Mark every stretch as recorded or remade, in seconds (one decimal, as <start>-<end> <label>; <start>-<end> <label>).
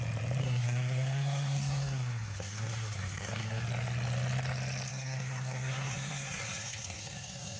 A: 0.0-0.4 recorded; 0.4-3.6 remade; 3.6-4.9 recorded; 4.9-7.6 remade